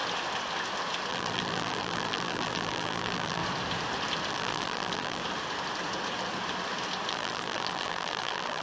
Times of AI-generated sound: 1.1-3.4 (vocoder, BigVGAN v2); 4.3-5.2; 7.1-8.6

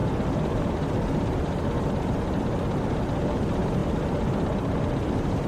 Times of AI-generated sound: none

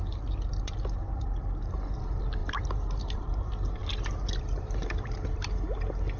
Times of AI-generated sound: 1.0-1.7 (vocoder, BigVGAN v2); 2.4-3.2